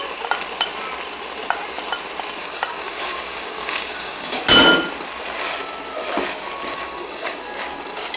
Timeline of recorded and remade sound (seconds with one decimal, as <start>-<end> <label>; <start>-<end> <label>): 0.0-2.4 recorded; 2.4-4.4 remade; 4.4-6.7 recorded; 6.7-7.4 remade; 7.4-8.2 recorded